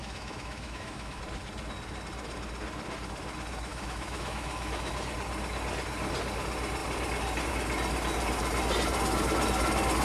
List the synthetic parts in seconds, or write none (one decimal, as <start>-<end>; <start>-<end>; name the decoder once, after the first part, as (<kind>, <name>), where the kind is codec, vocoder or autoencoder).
0.0-1.2 (autoencoder, DAC-VAE); 3.7-4.9